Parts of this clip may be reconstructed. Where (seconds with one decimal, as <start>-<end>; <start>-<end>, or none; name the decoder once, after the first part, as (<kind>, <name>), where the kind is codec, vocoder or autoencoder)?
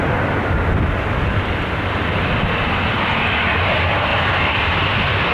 4.1-4.8 (vocoder, BigVGAN v2)